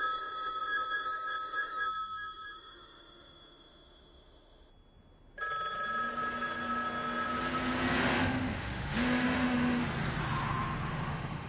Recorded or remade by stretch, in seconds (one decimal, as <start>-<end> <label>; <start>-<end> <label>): 0.0-4.7 remade; 4.7-8.0 recorded; 8.0-9.8 remade; 9.8-10.9 recorded; 10.9-11.5 remade